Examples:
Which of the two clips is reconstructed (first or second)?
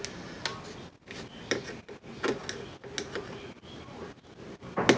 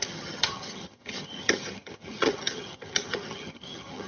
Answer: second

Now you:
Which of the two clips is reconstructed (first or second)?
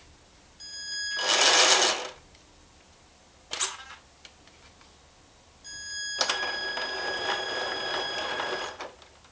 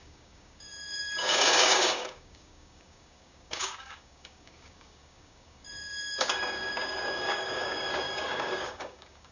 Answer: second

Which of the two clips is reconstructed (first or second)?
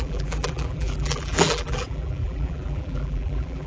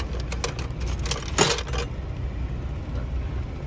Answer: first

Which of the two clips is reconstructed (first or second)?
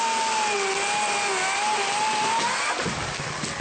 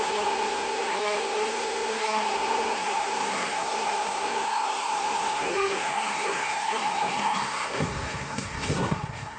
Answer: second